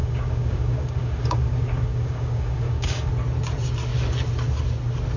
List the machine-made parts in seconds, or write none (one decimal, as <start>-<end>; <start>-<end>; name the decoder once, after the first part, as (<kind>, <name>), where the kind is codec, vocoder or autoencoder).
0.0-3.1 (codec, DAC)